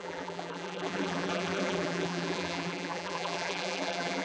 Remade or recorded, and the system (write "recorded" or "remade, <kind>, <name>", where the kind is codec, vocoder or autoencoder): remade, vocoder, BigVGAN v2